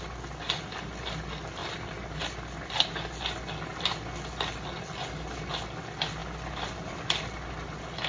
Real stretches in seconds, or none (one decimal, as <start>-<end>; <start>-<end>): 0.0-8.1